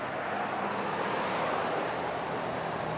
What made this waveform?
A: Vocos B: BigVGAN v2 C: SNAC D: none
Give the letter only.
D